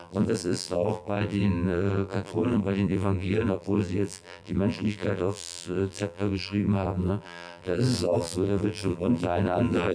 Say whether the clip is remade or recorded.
remade